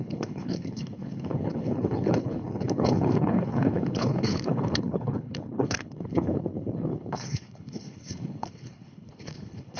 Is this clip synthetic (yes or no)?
yes